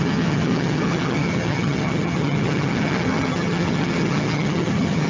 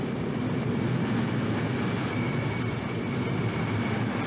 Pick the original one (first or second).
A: second